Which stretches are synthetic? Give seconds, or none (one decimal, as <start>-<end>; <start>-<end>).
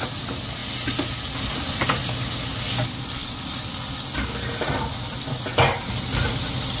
none